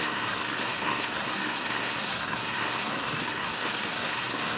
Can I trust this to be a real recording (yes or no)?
no